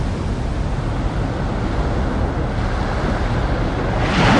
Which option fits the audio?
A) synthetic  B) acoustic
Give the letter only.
B